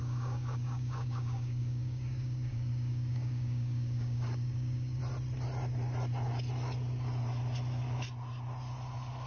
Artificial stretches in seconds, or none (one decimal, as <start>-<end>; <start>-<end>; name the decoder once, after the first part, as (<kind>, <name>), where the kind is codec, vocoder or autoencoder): 0.0-5.0 (codec, DAC)